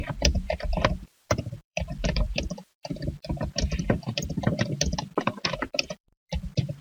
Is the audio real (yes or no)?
no